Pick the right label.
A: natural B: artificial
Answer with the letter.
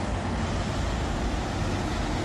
A